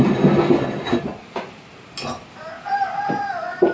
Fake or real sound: real